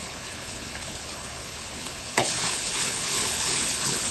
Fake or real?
fake